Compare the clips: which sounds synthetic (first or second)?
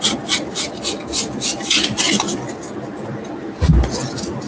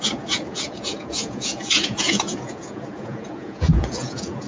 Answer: second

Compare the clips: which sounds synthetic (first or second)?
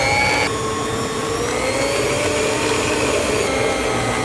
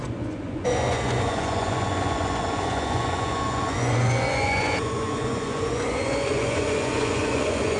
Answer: second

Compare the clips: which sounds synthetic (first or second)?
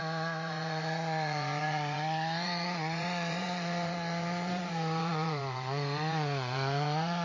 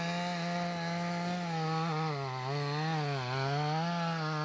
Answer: first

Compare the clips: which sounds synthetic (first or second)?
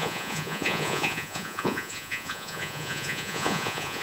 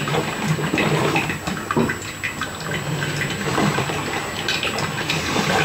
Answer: first